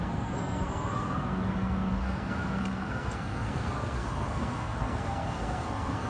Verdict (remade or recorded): remade